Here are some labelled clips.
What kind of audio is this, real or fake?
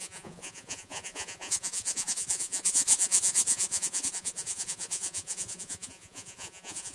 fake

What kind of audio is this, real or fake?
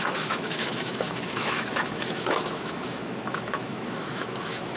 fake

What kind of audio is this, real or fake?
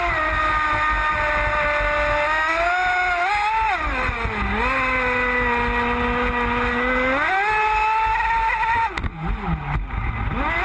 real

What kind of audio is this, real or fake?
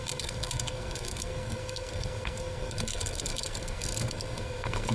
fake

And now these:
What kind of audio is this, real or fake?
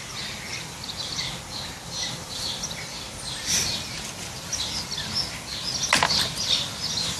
real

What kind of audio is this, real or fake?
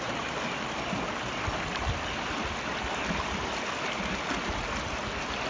real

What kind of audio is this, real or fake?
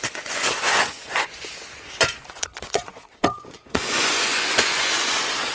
fake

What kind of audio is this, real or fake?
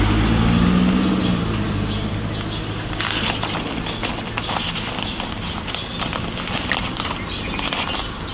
real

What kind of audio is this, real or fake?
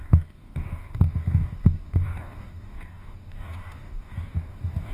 fake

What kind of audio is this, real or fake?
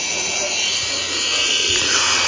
fake